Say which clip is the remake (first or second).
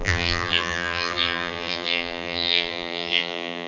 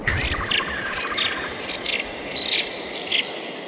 first